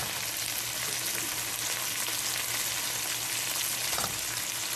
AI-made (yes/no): no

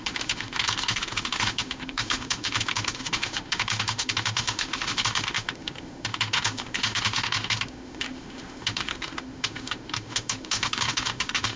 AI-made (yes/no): yes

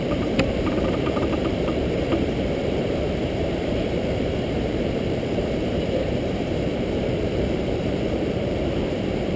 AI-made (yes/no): yes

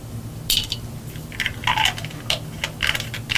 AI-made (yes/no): no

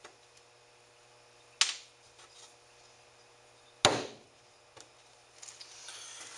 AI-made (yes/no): no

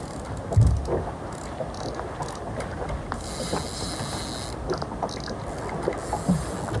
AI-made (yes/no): no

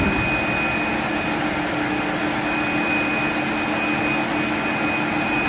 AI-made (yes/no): no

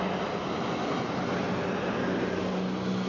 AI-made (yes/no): no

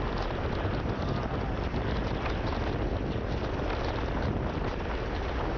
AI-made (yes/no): no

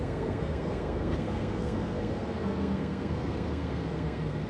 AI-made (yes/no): yes